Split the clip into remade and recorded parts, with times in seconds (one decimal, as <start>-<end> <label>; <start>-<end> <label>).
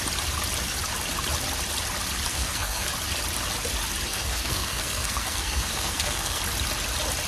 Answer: 0.0-2.3 recorded; 2.3-2.9 remade; 2.9-4.1 recorded; 4.1-6.4 remade; 6.4-7.3 recorded